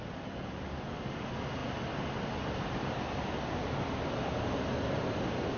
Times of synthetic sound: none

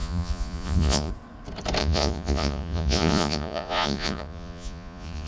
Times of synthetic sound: 0.0-1.1; 1.8-5.3

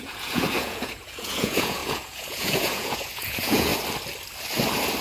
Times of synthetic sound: 0.0-3.7

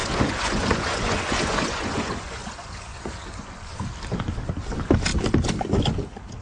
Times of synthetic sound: 0.0-3.8

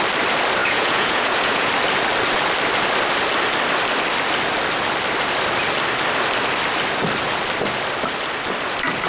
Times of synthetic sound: 0.6-1.7

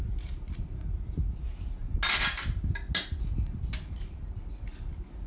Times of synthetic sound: none

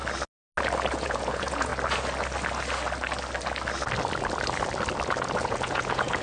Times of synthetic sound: 0.9-1.7; 5.4-6.2